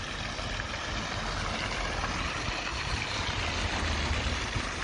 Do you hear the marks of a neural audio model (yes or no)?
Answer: no